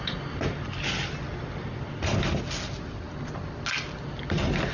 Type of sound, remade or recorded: recorded